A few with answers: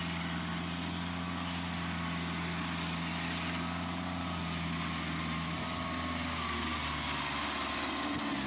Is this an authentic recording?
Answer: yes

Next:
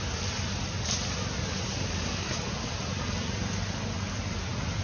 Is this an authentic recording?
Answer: yes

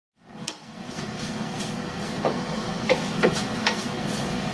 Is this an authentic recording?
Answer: no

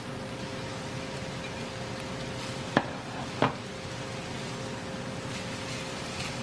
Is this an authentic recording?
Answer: yes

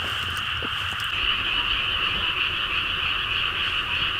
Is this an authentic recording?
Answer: no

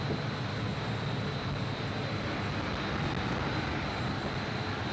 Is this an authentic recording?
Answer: yes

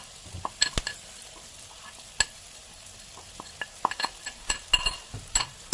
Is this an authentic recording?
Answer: yes